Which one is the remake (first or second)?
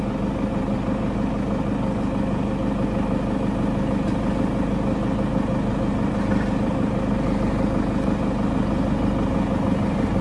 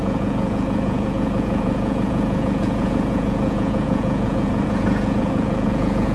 second